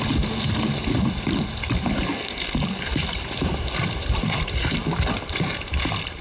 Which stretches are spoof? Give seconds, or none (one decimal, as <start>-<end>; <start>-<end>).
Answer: 3.1-5.7